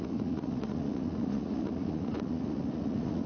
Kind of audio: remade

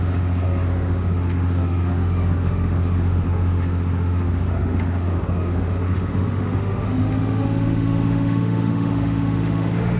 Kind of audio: remade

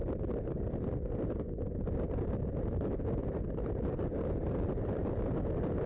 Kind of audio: recorded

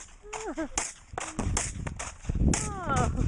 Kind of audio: recorded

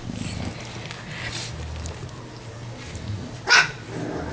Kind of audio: recorded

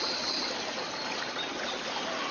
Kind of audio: recorded